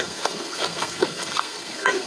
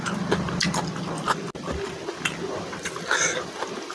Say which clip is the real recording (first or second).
second